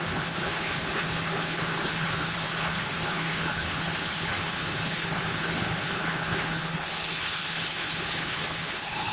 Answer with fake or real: fake